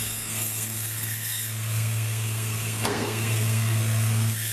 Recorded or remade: remade